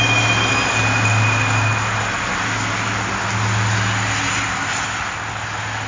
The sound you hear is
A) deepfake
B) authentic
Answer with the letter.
B